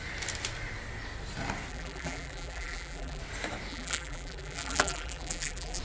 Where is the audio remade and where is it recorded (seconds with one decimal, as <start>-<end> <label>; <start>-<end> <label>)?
0.0-1.7 recorded; 1.7-3.2 remade; 3.2-3.7 recorded; 3.7-5.8 remade